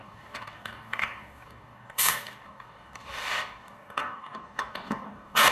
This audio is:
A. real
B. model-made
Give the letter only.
B